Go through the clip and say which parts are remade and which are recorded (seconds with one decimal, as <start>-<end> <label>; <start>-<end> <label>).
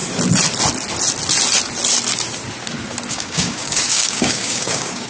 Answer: 0.0-3.1 recorded; 3.1-5.1 remade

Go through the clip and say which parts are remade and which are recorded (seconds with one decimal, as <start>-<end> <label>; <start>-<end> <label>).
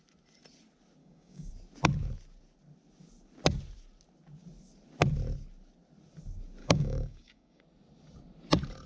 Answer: 0.0-1.0 recorded; 1.0-1.5 remade; 1.5-6.6 recorded; 6.6-7.6 remade; 7.6-8.9 recorded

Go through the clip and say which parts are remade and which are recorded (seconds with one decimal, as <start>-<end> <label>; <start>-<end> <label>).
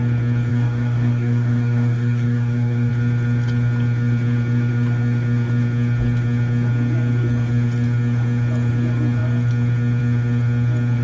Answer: 0.0-0.5 recorded; 0.5-2.9 remade; 2.9-11.0 recorded